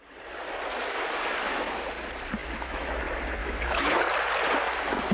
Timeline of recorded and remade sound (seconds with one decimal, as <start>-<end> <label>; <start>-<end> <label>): 0.0-2.4 recorded; 2.4-3.0 remade; 3.0-3.4 recorded; 3.4-4.0 remade; 4.0-5.1 recorded